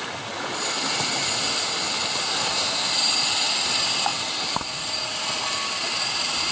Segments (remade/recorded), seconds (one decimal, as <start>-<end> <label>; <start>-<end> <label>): 0.0-2.2 recorded; 2.2-2.9 remade; 2.9-6.5 recorded